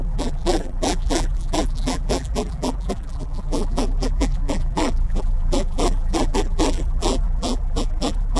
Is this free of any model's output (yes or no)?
no